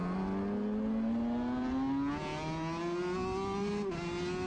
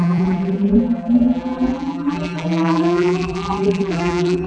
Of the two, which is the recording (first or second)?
first